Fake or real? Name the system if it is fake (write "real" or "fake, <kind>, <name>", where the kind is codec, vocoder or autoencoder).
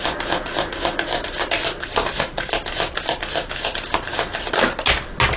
real